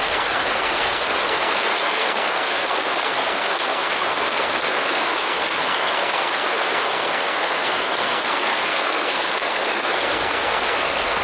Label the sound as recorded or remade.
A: remade